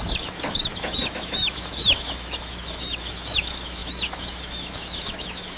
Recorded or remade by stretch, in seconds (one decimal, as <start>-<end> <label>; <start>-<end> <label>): 0.0-5.6 remade